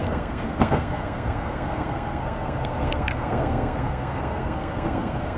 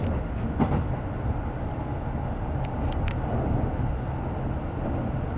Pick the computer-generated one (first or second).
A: first